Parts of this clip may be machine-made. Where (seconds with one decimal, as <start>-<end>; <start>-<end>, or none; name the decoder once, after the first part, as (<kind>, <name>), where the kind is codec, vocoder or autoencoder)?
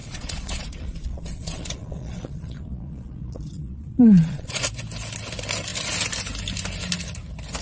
0.0-4.6 (vocoder, Vocos)